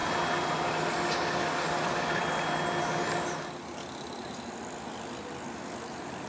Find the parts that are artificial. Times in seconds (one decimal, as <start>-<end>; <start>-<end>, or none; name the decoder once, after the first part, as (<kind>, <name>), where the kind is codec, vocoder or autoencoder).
none